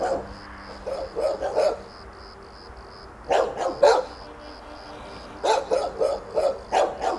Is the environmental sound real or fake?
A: real